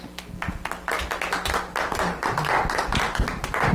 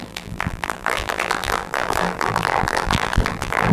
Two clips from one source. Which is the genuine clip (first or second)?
first